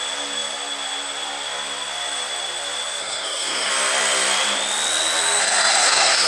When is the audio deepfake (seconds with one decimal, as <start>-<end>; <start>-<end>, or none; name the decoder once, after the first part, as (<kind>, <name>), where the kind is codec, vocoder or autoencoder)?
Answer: 3.0-3.7 (codec, SNAC); 5.4-6.3

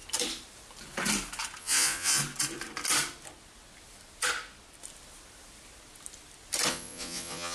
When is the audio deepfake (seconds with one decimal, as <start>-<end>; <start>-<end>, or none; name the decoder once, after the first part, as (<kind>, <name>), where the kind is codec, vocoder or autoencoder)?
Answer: 1.6-2.2 (vocoder, Vocos); 6.7-7.5

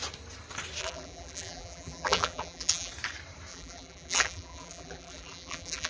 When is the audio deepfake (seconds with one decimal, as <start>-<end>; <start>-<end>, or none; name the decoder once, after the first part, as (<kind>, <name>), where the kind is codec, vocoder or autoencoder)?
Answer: 0.8-2.9 (vocoder, BigVGAN v2); 3.5-5.9

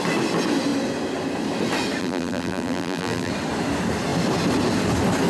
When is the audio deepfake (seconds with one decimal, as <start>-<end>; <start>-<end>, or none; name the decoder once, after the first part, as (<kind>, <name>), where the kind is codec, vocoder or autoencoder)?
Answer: 2.0-3.3 (vocoder, BigVGAN v2)

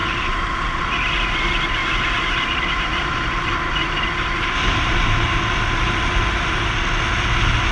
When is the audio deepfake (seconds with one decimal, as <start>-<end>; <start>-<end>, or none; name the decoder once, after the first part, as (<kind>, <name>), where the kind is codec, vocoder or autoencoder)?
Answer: 0.0-0.8 (vocoder, BigVGAN v2); 1.8-5.4